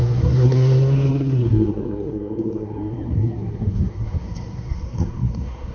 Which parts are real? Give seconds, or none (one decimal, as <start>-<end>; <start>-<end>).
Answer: none